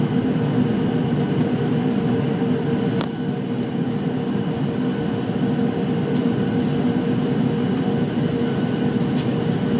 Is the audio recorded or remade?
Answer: recorded